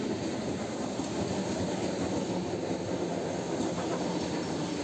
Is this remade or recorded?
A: recorded